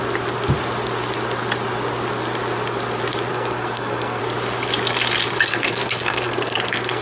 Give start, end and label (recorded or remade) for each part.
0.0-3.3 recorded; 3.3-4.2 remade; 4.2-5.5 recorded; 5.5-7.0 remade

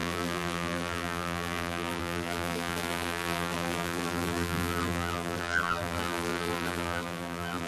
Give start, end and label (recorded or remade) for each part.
0.0-7.7 remade

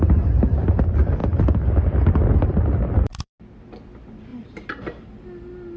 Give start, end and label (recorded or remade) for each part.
0.0-1.2 recorded; 1.2-3.3 remade; 3.3-4.3 recorded; 4.3-5.8 remade

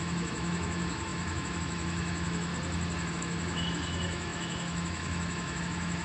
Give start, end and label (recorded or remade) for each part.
0.0-2.5 remade; 2.5-3.1 recorded; 3.1-6.0 remade

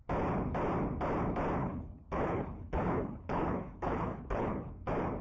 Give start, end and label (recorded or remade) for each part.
0.0-1.6 recorded; 1.6-4.7 remade; 4.7-5.2 recorded

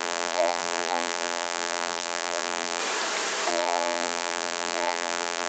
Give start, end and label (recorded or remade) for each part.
0.0-2.8 remade; 2.8-3.5 recorded; 3.5-5.5 remade